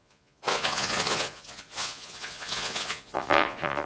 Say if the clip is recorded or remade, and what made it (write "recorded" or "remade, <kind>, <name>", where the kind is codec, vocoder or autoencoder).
remade, vocoder, Vocos